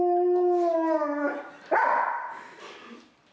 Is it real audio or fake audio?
real